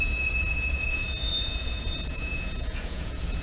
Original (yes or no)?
no